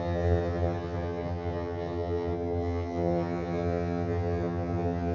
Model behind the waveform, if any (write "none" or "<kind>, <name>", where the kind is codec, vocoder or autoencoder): vocoder, HiFi-GAN